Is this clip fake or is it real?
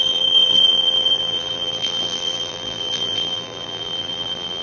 fake